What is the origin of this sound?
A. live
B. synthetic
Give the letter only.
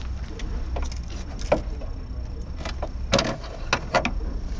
A